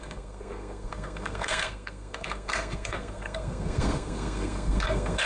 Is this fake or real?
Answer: fake